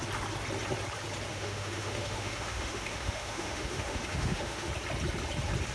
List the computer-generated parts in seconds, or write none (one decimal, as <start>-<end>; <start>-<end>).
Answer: 1.3-4.7